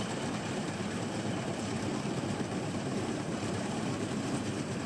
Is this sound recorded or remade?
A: remade